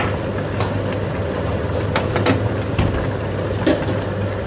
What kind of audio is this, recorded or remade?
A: recorded